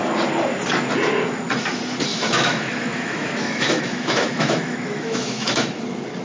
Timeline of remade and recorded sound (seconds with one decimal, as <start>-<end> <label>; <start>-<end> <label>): 0.0-2.1 recorded; 2.1-5.8 remade; 5.8-6.2 recorded